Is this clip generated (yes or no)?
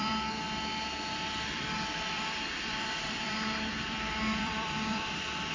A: yes